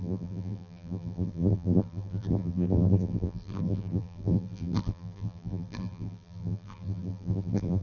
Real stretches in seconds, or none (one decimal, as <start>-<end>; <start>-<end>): none